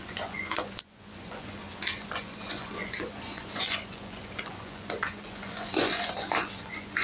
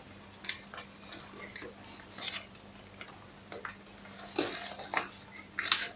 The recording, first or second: second